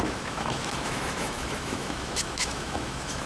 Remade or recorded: remade